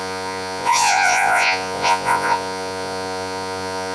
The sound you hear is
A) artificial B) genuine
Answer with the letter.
A